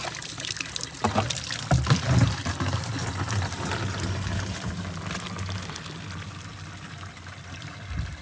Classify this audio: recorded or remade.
recorded